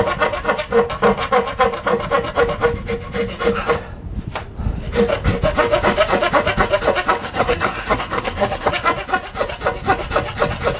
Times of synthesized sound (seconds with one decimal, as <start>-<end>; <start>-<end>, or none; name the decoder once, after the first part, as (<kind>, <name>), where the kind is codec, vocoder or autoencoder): 7.2-8.7 (codec, SNAC)